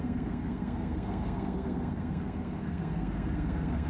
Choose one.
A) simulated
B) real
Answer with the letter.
A